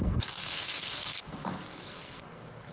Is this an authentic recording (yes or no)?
no